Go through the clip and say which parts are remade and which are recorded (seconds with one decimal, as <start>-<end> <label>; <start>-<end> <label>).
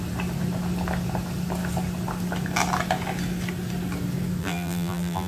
0.0-4.4 recorded; 4.4-5.3 remade